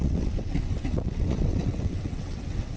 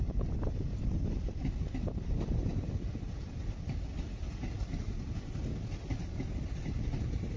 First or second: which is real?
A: second